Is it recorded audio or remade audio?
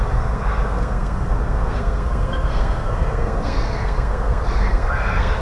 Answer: remade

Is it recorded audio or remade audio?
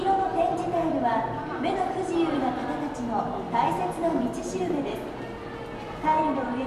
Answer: recorded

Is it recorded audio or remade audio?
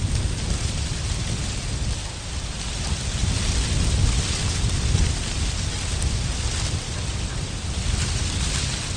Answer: recorded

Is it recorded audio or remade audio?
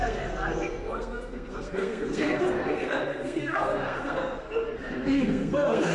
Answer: remade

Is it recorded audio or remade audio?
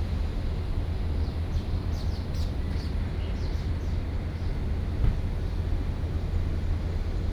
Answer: recorded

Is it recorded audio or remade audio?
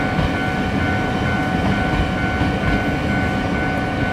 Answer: recorded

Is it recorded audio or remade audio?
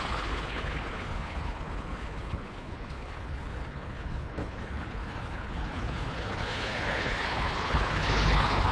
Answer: remade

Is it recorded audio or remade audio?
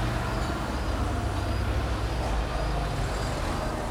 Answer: recorded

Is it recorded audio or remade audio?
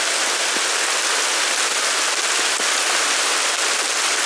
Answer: recorded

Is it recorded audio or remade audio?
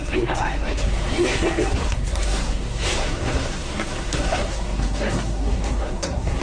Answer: remade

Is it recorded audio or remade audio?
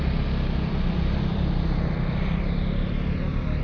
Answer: recorded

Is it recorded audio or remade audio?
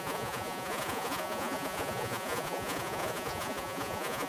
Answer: remade